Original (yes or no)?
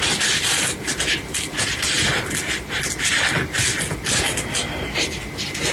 yes